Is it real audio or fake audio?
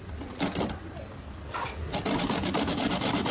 real